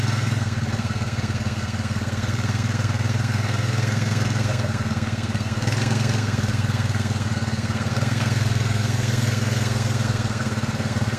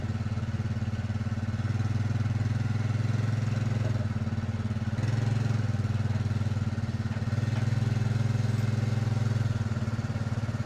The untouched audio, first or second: second